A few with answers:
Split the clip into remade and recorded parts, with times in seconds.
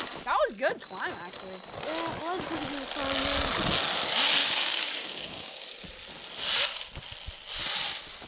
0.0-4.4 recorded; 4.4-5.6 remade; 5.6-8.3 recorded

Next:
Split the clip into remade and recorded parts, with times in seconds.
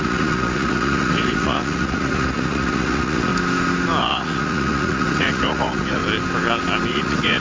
0.0-3.3 remade; 3.3-4.0 recorded; 4.0-6.0 remade; 6.0-6.9 recorded; 6.9-7.4 remade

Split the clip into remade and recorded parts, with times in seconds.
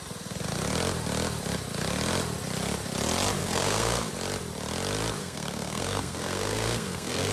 0.0-3.4 recorded; 3.4-4.1 remade; 4.1-5.2 recorded; 5.2-7.3 remade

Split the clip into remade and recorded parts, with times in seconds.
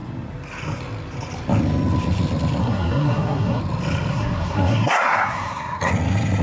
0.0-2.6 recorded; 2.6-3.6 remade; 3.6-4.1 recorded; 4.1-5.9 remade; 5.9-6.4 recorded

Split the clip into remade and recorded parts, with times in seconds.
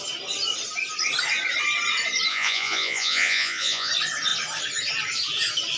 0.0-2.3 recorded; 2.3-3.9 remade; 3.9-5.8 recorded